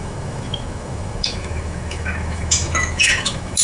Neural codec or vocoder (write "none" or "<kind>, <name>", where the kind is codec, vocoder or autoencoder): autoencoder, DAC-VAE